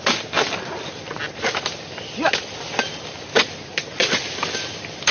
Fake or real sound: real